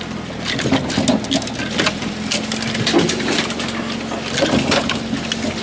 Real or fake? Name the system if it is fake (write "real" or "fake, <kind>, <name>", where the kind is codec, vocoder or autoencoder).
real